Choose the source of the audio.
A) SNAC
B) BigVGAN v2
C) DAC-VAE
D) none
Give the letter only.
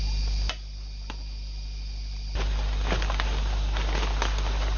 D